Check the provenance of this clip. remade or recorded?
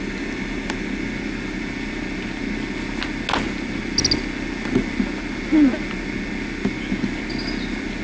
recorded